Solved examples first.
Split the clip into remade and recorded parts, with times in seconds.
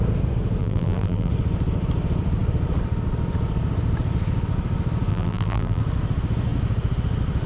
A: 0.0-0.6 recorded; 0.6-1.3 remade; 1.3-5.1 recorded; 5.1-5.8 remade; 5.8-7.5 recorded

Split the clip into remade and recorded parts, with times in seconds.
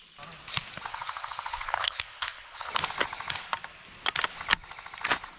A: 0.0-0.9 recorded; 0.9-2.7 remade; 2.7-5.4 recorded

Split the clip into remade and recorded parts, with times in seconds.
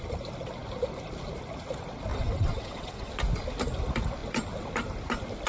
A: 0.0-2.1 recorded; 2.1-3.1 remade; 3.1-5.5 recorded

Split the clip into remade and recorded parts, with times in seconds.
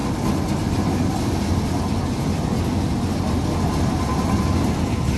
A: 0.0-5.2 recorded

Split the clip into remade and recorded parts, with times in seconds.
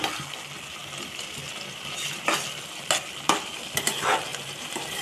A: 0.0-0.8 recorded; 0.8-3.8 remade; 3.8-4.3 recorded; 4.3-5.0 remade